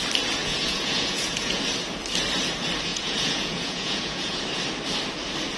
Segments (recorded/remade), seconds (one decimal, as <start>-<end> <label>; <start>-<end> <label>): 0.0-0.4 recorded; 0.4-1.6 remade; 1.6-2.9 recorded; 2.9-4.4 remade; 4.4-5.6 recorded